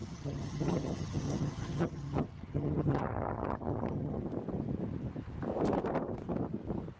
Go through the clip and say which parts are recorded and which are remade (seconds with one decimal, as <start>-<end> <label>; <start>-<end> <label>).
0.0-4.2 remade; 4.2-7.0 recorded